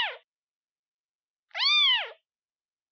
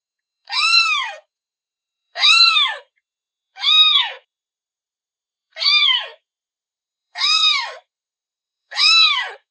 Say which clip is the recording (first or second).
first